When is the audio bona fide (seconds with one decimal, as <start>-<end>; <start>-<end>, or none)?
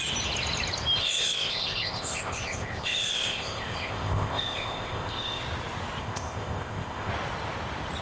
0.0-1.0; 5.4-6.0; 7.1-8.0